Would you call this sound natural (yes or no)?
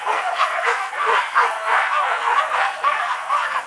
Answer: no